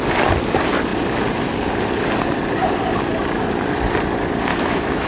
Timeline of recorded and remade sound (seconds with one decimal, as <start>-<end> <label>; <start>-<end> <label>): 0.0-4.5 recorded; 4.5-5.1 remade